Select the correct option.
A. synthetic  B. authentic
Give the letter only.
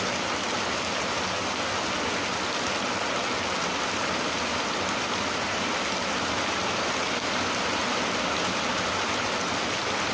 B